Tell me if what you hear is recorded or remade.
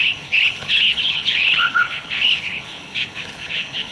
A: remade